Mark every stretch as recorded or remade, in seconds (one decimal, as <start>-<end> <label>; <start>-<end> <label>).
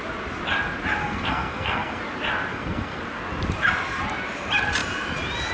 0.0-1.0 recorded; 1.0-2.0 remade; 2.0-2.5 recorded; 2.5-3.0 remade; 3.0-5.5 recorded